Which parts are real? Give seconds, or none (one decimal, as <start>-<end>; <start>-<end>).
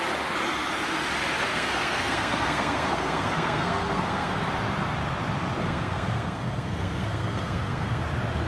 0.0-1.5; 4.5-5.6; 8.0-8.5